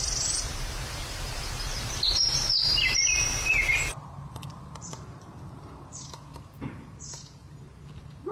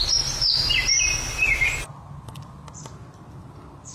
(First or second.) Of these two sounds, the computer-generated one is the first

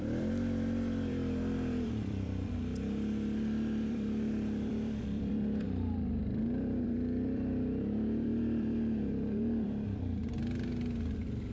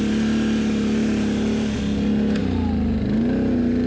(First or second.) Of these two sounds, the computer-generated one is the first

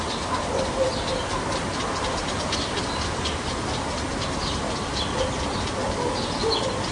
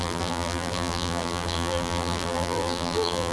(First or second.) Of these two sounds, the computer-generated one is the second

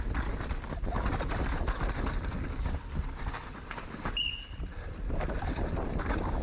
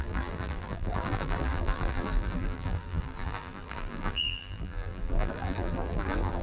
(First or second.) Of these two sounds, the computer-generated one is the second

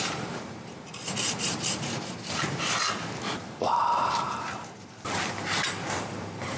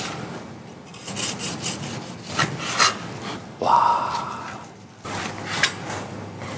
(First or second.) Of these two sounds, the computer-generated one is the first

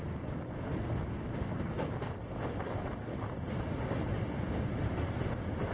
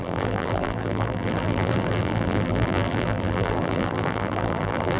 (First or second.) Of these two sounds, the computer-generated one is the second